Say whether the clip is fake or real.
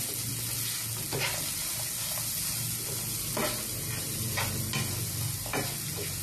real